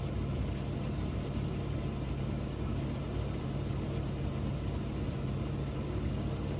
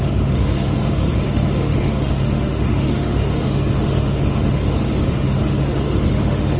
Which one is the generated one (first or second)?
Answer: second